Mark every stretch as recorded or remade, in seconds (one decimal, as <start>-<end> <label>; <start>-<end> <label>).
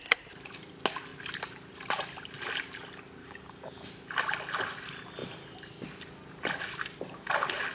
0.0-3.2 recorded; 3.2-3.9 remade; 3.9-7.7 recorded